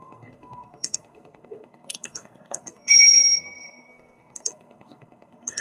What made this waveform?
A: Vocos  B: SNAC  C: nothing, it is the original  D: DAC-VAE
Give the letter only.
B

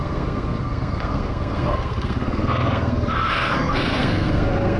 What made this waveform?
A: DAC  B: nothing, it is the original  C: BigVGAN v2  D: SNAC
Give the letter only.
D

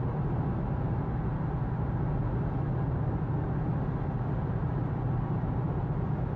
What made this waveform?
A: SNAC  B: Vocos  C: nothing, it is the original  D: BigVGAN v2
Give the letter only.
C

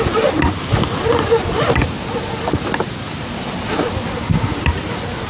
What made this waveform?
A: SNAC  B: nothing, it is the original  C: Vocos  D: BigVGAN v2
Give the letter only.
B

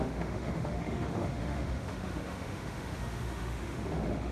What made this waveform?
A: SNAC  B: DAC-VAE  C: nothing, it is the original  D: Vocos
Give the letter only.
B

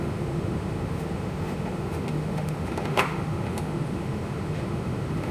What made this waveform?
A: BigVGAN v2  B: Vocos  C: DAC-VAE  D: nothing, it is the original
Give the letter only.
C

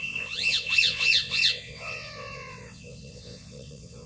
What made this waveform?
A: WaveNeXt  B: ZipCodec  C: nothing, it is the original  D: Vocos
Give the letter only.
A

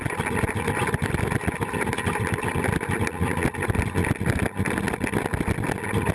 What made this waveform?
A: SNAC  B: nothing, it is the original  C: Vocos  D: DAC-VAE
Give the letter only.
B